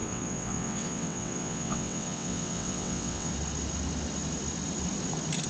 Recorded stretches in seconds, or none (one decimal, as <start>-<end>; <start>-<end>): 3.3-5.5